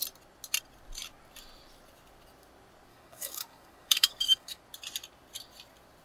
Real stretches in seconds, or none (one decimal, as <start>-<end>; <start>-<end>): 0.0-2.9; 4.6-6.0

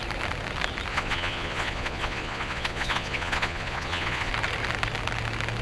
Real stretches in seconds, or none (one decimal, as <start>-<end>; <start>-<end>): 0.0-0.9; 4.3-5.6